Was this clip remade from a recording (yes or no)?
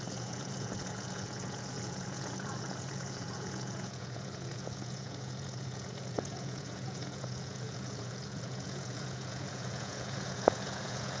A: yes